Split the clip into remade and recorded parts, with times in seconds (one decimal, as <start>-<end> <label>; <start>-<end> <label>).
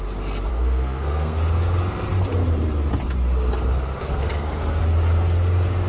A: 0.0-0.5 recorded; 0.5-1.4 remade; 1.4-4.0 recorded; 4.0-4.8 remade; 4.8-5.9 recorded